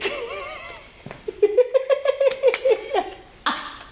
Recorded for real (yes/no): yes